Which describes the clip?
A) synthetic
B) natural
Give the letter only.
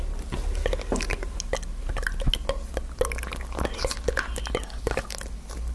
B